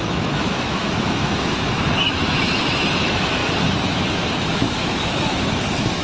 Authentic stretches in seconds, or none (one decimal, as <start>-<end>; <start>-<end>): none